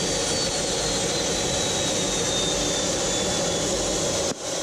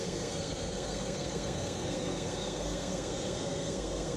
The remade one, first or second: second